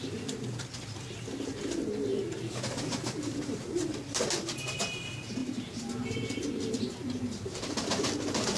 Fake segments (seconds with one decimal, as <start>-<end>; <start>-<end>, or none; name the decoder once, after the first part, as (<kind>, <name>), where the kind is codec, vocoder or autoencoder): 0.0-2.1 (vocoder, BigVGAN v2); 3.3-5.4; 6.7-8.6